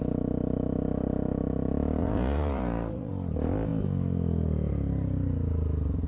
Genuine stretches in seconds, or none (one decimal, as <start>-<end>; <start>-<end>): 0.0-2.0; 3.1-6.1